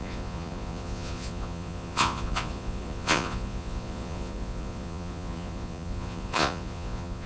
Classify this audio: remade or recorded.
remade